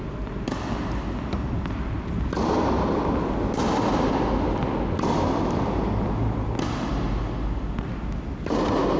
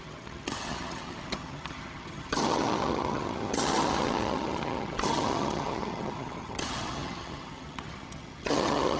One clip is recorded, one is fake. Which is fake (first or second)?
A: second